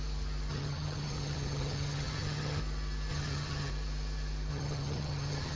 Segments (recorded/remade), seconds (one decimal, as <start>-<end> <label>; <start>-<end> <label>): 0.0-0.5 recorded; 0.5-2.6 remade; 2.6-3.1 recorded; 3.1-3.7 remade; 3.7-4.5 recorded; 4.5-5.6 remade